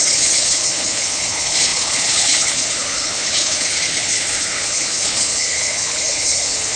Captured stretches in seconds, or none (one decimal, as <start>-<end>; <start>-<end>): none